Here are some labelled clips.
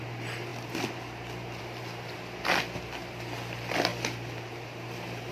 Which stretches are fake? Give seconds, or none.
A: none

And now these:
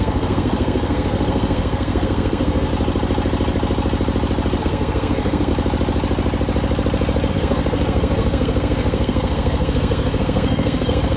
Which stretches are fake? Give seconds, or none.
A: 0.0-2.7 (codec, SNAC); 4.6-5.5; 7.3-11.2

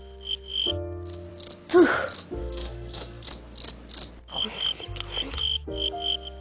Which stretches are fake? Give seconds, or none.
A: 2.4-3.3 (codec, SNAC)